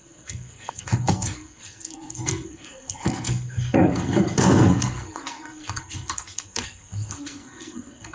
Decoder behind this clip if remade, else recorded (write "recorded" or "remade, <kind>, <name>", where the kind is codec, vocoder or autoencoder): remade, codec, SNAC